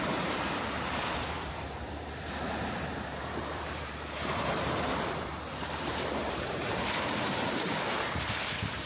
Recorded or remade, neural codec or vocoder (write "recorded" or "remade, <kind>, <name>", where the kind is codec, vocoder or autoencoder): remade, vocoder, BigVGAN v2